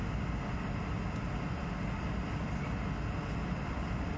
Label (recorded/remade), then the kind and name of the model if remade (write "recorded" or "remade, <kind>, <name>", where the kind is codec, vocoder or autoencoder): recorded